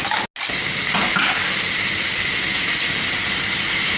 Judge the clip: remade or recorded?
recorded